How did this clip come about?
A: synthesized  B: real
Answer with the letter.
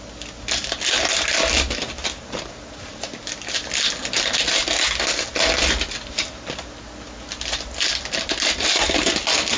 B